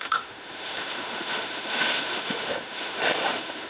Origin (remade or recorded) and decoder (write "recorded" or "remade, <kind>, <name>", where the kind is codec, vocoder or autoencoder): remade, autoencoder, DAC-VAE